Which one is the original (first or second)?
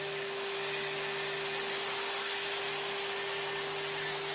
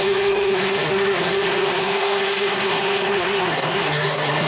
first